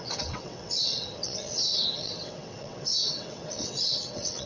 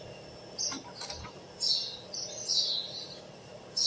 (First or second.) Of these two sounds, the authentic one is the second